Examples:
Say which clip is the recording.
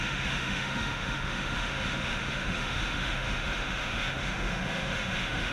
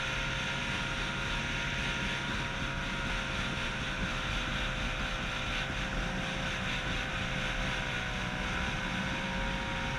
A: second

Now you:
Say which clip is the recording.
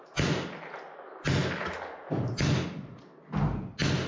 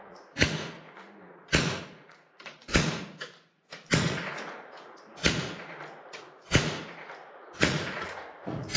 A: first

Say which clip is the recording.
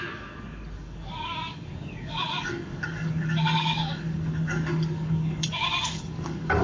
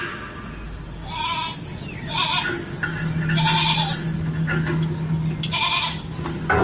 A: second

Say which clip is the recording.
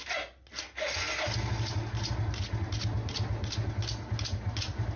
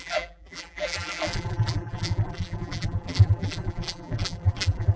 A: first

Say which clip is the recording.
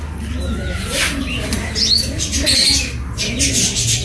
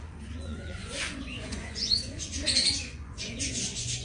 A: first